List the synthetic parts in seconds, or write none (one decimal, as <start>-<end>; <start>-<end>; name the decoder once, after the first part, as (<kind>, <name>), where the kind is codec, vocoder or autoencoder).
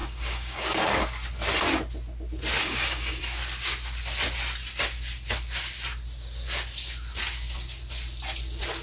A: 0.0-0.8 (codec, DAC); 2.6-3.2